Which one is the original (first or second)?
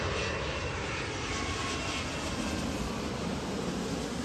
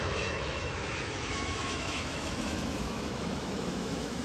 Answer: first